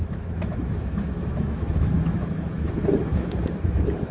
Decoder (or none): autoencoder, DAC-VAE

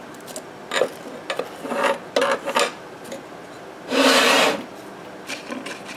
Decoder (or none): none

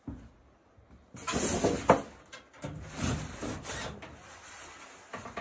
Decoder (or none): none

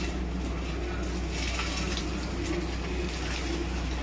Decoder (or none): none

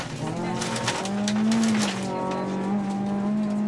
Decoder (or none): none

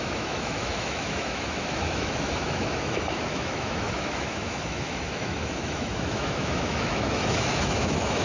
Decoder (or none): autoencoder, DAC-VAE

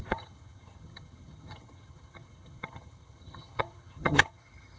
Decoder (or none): vocoder, HiFi-GAN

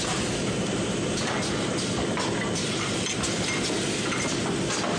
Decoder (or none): none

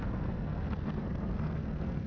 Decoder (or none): codec, SNAC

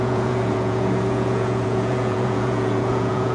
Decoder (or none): vocoder, Vocos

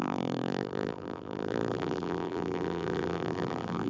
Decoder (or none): vocoder, BigVGAN v2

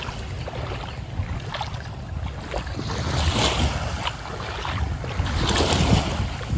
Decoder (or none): none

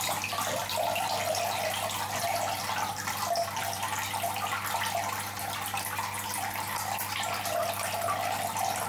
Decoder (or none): none